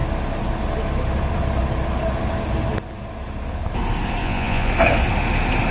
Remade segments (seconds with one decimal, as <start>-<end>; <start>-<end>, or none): 4.2-4.7